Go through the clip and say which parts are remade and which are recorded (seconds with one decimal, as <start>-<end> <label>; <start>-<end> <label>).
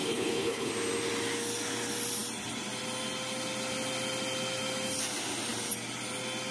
0.0-0.7 remade; 0.7-6.5 recorded